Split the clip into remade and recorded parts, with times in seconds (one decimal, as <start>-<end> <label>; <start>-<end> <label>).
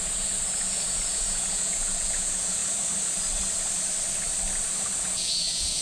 0.0-2.6 remade; 2.6-5.0 recorded; 5.0-5.8 remade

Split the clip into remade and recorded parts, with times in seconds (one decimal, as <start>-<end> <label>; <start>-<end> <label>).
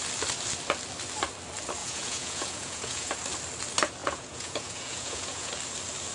0.0-1.8 recorded; 1.8-3.1 remade; 3.1-4.0 recorded; 4.0-5.5 remade; 5.5-6.1 recorded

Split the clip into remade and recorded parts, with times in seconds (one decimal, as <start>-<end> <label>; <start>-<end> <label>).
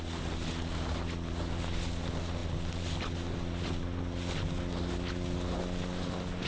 0.0-6.5 recorded